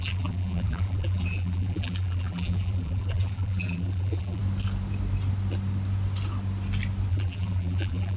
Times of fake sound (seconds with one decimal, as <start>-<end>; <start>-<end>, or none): 0.0-4.4; 7.1-8.2